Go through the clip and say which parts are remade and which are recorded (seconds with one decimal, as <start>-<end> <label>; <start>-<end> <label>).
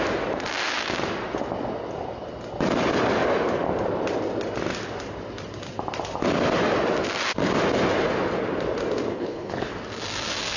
0.0-9.1 recorded; 9.1-9.7 remade; 9.7-10.6 recorded